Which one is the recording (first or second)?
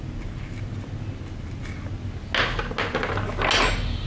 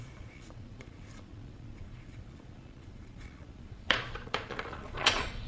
first